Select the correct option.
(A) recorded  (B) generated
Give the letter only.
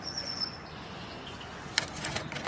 B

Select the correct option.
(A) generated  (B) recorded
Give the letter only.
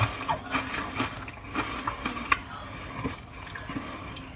B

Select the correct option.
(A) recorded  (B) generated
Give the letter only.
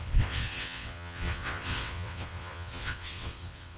B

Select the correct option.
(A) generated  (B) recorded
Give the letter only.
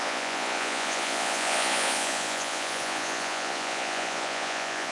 A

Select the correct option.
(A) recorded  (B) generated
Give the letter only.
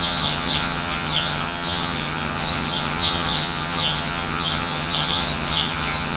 B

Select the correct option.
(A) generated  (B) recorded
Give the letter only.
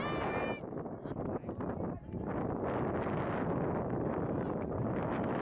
B